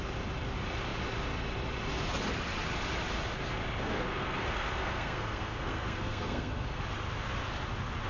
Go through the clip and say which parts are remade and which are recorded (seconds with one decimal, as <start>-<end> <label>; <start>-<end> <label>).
0.0-3.8 recorded; 3.8-6.8 remade; 6.8-8.1 recorded